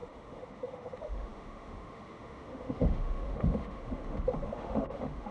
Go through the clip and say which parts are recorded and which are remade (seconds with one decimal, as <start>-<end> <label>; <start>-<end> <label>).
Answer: 0.0-5.3 remade